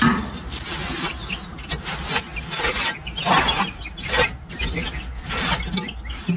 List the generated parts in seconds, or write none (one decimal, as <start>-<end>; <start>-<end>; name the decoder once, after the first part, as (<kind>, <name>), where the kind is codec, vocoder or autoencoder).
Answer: none